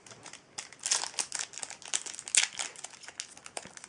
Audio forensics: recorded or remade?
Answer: recorded